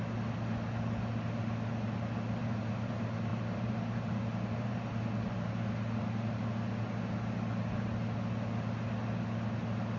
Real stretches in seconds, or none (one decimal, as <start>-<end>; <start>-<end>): 0.0-2.4; 2.9-3.3; 4.9-10.0